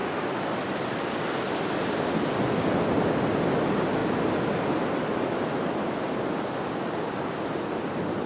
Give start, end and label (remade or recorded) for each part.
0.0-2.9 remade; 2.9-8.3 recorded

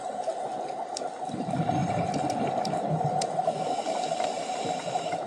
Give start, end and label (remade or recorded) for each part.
0.0-1.8 recorded; 1.8-5.3 remade

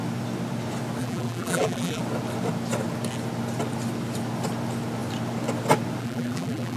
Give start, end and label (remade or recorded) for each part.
0.0-1.0 recorded; 1.0-2.0 remade; 2.0-6.0 recorded; 6.0-6.8 remade